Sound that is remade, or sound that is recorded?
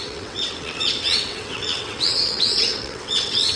remade